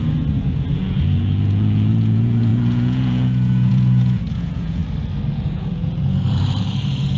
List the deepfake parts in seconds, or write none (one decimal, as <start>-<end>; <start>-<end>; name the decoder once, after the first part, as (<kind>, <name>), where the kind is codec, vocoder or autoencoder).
0.0-4.8 (vocoder, Vocos); 5.3-7.2